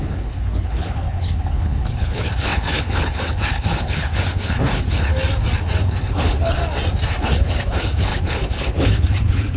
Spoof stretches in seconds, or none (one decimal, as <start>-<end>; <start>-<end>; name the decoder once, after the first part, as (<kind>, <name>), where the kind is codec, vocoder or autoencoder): 0.0-5.1 (codec, HILCodec); 5.8-6.6; 7.2-9.6